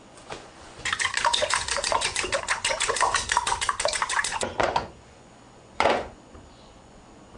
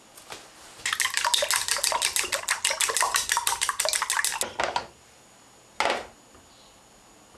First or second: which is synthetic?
first